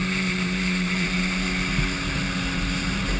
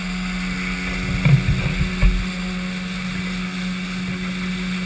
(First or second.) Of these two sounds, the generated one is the first